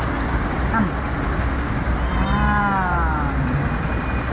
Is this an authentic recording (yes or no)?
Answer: yes